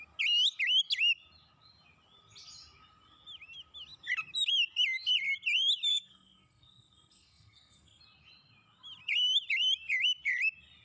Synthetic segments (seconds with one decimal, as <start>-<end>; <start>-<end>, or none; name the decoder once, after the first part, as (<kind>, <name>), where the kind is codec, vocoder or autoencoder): 5.9-8.0 (codec, SNAC)